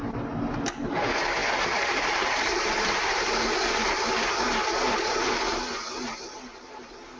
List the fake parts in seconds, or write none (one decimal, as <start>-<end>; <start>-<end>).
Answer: 1.4-3.3